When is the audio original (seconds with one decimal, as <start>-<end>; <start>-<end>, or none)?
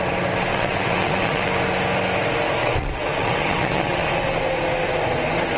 0.0-0.5; 1.5-2.6; 4.1-5.6